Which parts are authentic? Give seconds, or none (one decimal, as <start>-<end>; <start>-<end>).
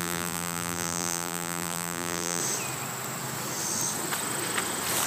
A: 2.4-5.1